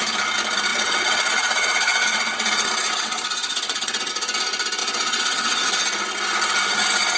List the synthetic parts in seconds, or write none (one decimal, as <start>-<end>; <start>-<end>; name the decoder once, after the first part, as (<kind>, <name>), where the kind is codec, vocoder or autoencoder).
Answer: 0.7-4.1 (vocoder, WaveNeXt); 4.8-5.7